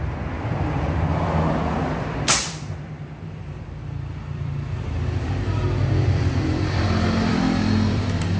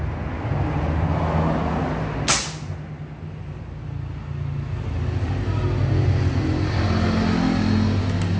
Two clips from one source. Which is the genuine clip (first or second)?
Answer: second